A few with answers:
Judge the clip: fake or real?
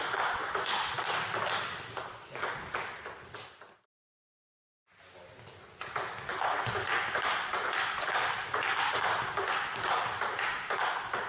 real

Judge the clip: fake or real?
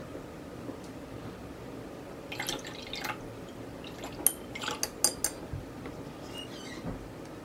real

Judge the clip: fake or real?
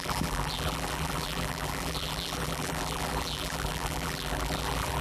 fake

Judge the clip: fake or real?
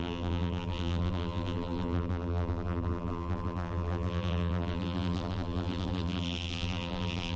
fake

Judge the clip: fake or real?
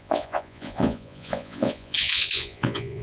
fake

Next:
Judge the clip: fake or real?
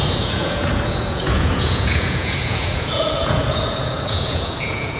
fake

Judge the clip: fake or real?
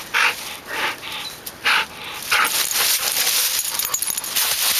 real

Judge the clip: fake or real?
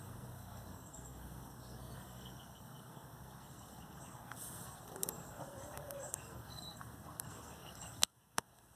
fake